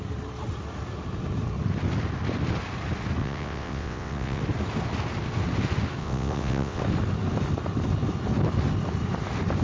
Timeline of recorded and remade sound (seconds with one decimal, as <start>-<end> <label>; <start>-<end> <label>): 0.0-3.2 recorded; 3.2-4.4 remade; 4.4-6.0 recorded; 6.0-6.8 remade; 6.8-9.6 recorded